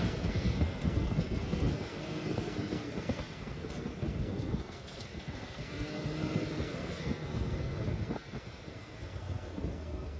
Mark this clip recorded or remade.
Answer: remade